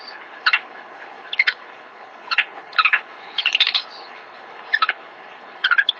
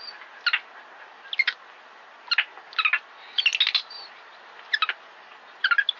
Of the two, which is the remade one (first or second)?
first